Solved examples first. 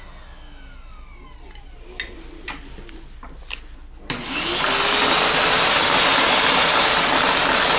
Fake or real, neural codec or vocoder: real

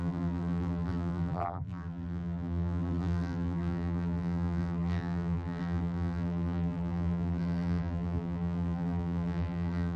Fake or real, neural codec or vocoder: fake, vocoder, BigVGAN v2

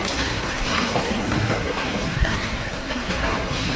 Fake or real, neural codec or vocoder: fake, codec, SNAC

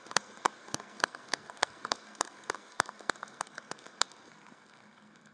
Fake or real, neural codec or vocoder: fake, codec, SNAC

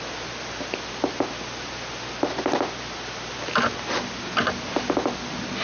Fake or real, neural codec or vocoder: real